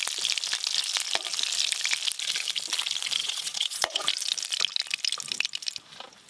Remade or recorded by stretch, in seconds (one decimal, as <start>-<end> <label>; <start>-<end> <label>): 0.0-3.2 recorded; 3.2-4.0 remade; 4.0-6.3 recorded